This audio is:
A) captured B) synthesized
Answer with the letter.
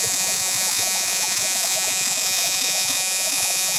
B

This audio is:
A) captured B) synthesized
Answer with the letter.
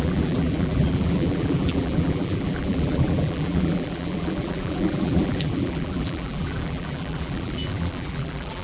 B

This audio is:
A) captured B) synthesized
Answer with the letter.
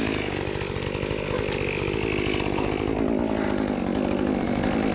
A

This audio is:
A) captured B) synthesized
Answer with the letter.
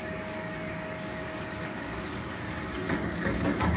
B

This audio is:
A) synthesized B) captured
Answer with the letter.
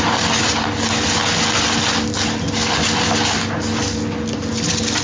B